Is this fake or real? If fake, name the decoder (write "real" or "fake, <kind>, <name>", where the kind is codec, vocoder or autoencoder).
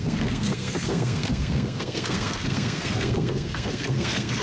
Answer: fake, codec, SNAC